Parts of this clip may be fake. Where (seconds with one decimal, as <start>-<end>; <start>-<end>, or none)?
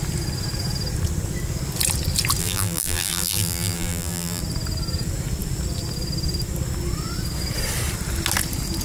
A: 2.4-4.4